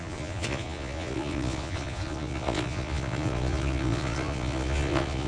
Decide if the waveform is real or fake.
fake